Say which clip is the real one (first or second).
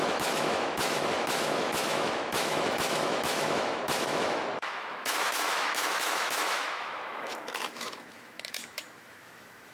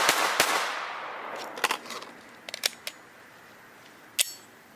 second